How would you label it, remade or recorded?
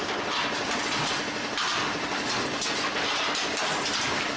recorded